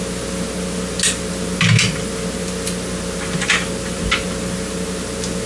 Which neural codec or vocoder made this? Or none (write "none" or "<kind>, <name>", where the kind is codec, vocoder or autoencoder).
none